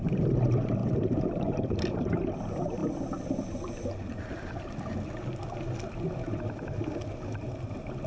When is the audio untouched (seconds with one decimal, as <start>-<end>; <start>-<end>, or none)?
0.0-0.8; 2.1-2.8; 4.3-8.1